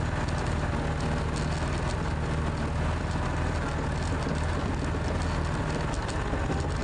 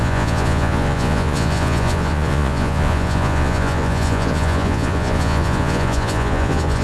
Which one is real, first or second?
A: first